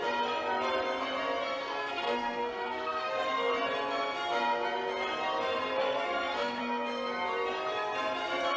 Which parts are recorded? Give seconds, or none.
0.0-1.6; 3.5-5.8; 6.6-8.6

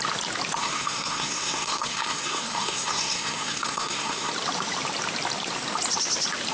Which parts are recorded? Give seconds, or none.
0.0-0.6; 4.3-6.5